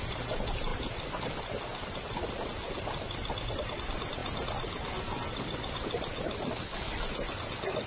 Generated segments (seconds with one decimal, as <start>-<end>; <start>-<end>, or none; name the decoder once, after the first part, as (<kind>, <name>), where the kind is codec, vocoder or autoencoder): none